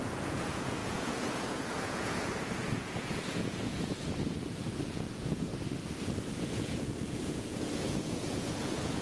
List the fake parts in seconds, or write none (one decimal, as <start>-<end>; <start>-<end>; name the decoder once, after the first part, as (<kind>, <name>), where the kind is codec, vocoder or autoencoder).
0.0-5.5 (vocoder, Vocos); 6.3-9.0